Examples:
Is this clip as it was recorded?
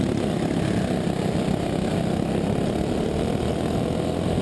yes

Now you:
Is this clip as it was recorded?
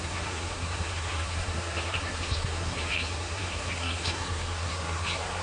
no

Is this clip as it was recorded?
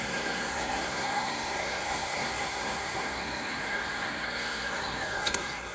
no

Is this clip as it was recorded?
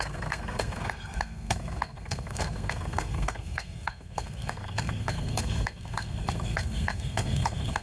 no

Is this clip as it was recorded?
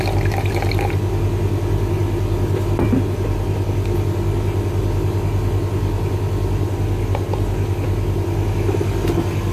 yes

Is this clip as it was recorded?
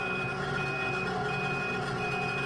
yes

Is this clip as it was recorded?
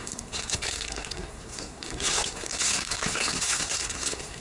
no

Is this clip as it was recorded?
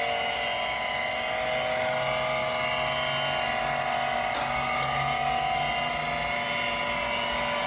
yes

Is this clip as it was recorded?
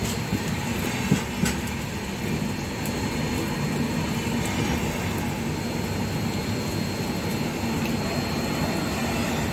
yes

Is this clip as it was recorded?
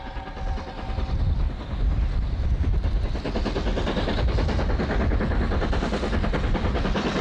yes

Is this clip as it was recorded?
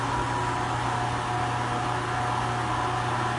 yes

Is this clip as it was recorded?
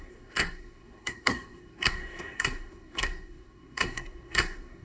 no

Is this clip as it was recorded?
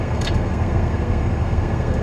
no